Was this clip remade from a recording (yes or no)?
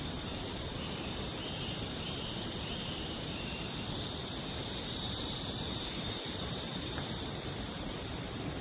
yes